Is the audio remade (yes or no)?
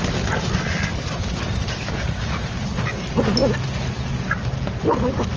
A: no